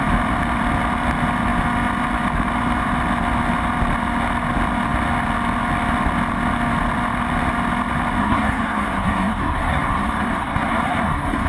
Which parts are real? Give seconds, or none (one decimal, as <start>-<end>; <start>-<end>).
0.0-8.2